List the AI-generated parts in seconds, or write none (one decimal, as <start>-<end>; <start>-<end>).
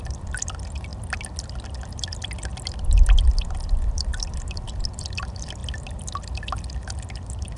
0.0-0.9; 1.9-2.5; 3.5-5.6; 6.6-7.6